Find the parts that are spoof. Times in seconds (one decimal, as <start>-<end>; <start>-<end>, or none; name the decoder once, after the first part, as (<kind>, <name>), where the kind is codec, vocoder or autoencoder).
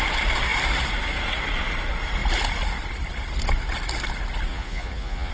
4.5-5.3 (vocoder, Vocos)